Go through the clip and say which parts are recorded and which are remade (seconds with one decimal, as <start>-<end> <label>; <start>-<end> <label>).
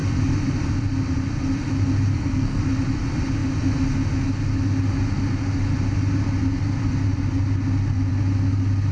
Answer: 0.0-2.1 recorded; 2.1-2.6 remade; 2.6-8.9 recorded